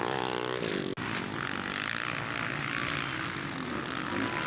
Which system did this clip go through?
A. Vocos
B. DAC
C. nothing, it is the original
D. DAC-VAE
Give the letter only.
C